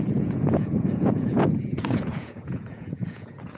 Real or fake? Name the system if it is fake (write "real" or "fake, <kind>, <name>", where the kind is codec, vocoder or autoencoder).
fake, vocoder, Vocos